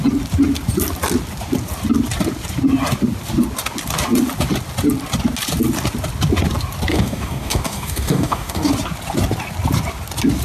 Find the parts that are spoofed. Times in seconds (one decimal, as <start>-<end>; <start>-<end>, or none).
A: 6.9-8.7